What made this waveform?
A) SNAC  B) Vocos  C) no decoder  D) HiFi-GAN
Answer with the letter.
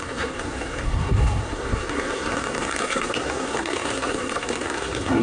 A